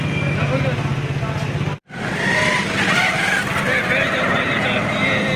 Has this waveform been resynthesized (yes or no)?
no